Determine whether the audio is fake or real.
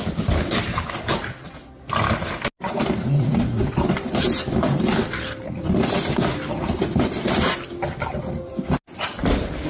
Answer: real